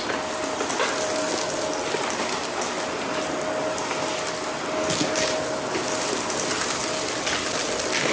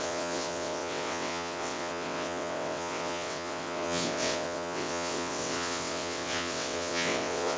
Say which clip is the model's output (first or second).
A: second